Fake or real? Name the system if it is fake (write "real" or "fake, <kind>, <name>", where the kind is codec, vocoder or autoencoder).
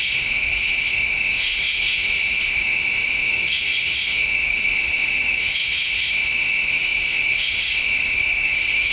fake, autoencoder, DAC-VAE